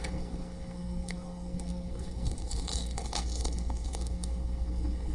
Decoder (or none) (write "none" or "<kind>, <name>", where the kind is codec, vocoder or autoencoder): codec, SNAC